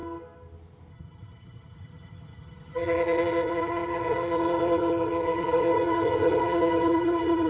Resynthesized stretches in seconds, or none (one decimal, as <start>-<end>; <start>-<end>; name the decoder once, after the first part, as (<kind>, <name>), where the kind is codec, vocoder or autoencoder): 0.9-7.5 (vocoder, HiFi-GAN)